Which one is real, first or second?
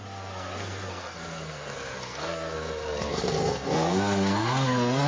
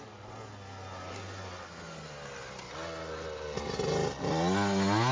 second